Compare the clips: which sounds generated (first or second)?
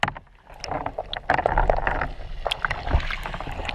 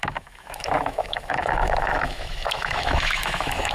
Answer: second